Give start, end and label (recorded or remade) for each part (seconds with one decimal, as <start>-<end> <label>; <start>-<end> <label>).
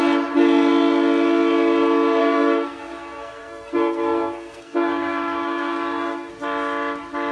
0.0-2.2 recorded; 2.2-6.3 remade; 6.3-7.3 recorded